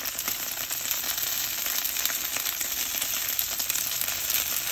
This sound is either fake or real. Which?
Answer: real